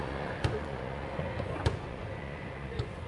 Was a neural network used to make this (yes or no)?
yes